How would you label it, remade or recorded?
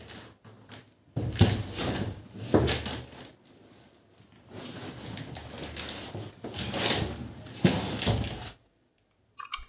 recorded